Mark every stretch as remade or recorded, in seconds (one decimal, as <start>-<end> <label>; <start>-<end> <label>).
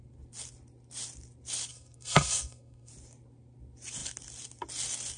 0.0-1.7 recorded; 1.7-2.9 remade; 2.9-5.2 recorded